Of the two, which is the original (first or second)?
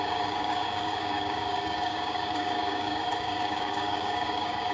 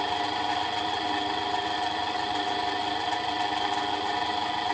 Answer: second